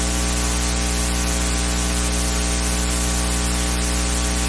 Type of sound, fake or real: real